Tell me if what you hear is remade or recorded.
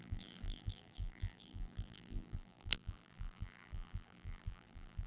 remade